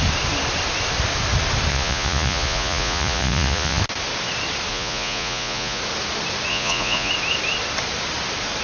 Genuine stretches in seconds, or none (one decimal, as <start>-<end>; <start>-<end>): 0.0-1.7; 3.8-4.7; 5.8-6.5; 7.1-8.6